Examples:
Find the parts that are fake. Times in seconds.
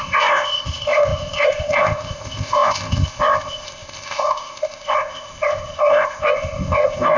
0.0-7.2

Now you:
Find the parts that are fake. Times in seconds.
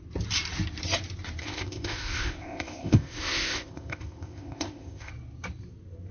1.4-5.1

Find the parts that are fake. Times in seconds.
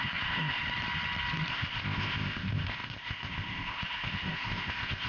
0.0-0.6; 1.5-5.1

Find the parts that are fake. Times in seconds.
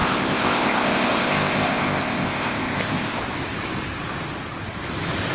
0.0-3.2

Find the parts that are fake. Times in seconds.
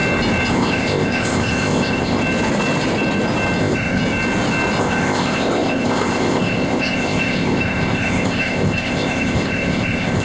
0.5-2.2; 3.6-4.0; 4.8-10.2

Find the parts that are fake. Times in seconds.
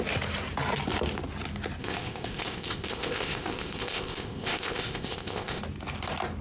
1.8-5.6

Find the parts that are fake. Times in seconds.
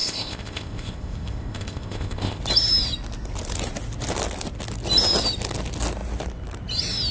0.0-2.4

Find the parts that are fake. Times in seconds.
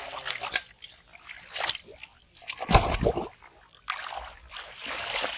none